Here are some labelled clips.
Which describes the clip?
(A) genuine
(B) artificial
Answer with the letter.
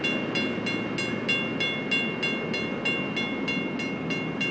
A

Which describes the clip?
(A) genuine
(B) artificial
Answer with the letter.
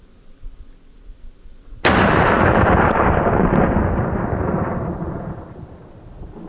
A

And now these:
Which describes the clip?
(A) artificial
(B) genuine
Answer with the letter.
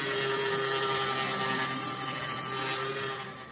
B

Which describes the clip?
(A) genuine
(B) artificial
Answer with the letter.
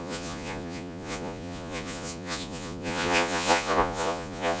B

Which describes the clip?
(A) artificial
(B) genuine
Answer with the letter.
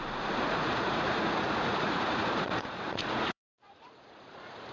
A